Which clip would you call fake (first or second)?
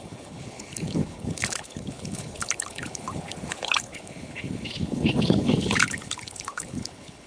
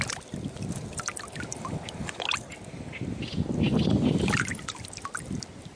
first